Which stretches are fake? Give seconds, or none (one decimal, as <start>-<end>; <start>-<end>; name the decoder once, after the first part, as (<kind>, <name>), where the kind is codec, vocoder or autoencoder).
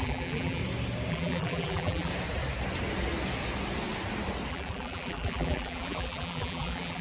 0.0-0.6 (vocoder, BigVGAN v2); 1.1-2.1; 4.5-7.0